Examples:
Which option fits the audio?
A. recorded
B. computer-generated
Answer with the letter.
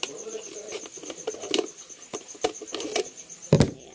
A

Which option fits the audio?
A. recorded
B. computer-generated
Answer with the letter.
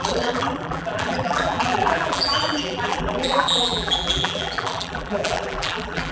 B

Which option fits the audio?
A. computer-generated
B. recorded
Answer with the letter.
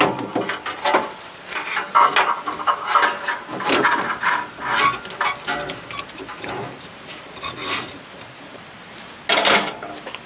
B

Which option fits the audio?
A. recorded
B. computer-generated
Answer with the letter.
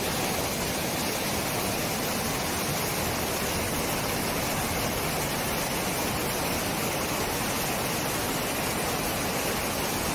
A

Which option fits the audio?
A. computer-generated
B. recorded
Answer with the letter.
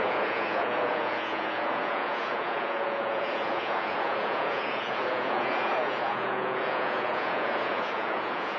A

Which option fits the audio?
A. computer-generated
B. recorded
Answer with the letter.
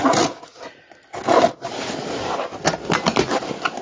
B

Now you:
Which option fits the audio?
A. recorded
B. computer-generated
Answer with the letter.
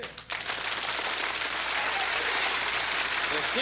A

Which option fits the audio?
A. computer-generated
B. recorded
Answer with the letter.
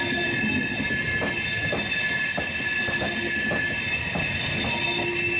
B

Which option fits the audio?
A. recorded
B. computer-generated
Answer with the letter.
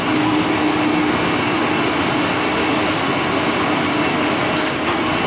A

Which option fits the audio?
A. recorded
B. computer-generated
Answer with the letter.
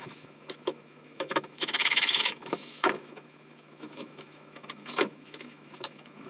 B